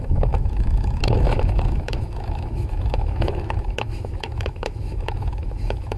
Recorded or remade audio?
remade